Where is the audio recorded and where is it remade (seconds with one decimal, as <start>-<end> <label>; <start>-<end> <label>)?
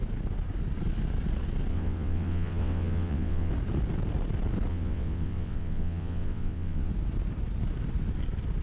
0.0-1.7 recorded; 1.7-3.5 remade; 3.5-4.7 recorded; 4.7-6.9 remade; 6.9-8.6 recorded